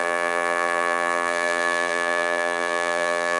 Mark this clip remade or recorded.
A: remade